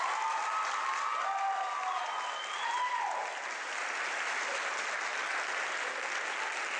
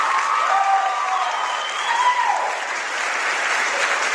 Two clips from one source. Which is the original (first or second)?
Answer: first